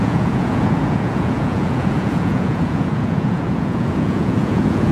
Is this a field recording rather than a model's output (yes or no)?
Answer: no